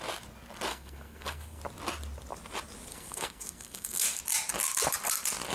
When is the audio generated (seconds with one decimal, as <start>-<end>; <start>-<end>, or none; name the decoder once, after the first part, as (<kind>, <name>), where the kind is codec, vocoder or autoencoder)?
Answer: 0.7-1.6 (codec, SNAC); 2.9-4.2